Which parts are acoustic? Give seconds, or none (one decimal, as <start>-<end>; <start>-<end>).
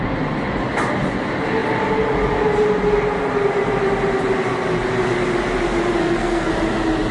0.0-6.0; 6.5-7.1